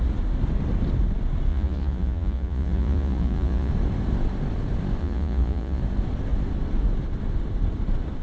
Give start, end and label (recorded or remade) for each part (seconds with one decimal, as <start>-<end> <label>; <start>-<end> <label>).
0.0-1.5 recorded; 1.5-3.7 remade; 3.7-5.0 recorded; 5.0-5.8 remade; 5.8-8.2 recorded

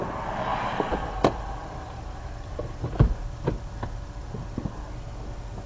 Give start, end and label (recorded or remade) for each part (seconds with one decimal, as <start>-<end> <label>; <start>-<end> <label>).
0.0-1.6 recorded; 1.6-3.2 remade; 3.2-5.7 recorded

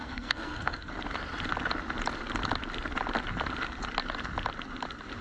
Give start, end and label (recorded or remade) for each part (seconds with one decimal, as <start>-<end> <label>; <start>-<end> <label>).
0.0-0.9 remade; 0.9-5.2 recorded

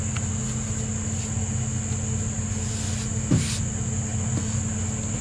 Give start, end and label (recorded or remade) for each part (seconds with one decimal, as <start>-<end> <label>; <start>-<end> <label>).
0.0-5.2 recorded

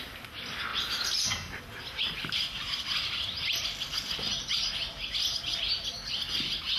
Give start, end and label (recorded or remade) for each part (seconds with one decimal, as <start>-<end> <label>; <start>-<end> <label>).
0.0-6.8 recorded